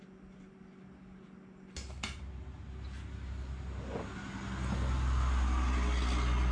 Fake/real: real